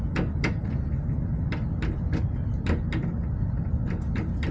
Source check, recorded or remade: recorded